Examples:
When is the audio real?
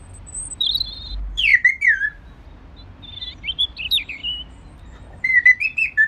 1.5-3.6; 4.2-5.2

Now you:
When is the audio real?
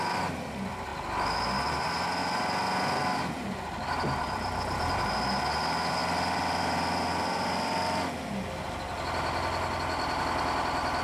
0.0-11.0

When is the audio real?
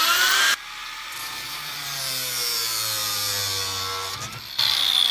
0.0-0.8; 2.0-5.1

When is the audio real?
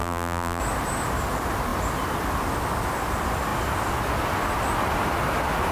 0.6-5.7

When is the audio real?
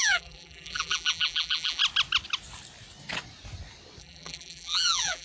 1.8-4.0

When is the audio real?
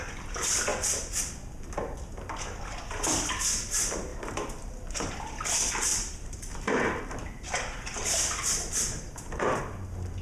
0.0-5.9; 9.6-10.2